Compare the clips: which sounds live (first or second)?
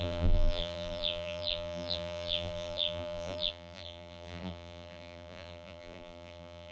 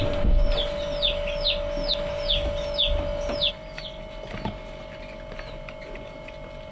second